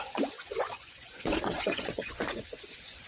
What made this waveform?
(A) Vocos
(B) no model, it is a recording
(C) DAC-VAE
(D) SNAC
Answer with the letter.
A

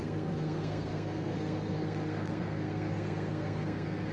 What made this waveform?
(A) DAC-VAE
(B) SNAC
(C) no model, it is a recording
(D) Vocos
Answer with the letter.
B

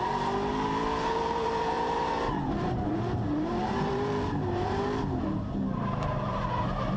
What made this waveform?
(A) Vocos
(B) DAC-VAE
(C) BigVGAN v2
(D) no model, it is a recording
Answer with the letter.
C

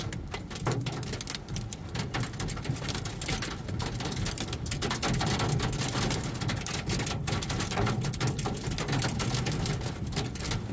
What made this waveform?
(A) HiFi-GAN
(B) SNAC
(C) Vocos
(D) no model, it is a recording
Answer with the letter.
D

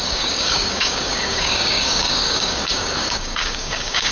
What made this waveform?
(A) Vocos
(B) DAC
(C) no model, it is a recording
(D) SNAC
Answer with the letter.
B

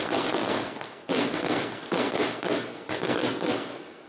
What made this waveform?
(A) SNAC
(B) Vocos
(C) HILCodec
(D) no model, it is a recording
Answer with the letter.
A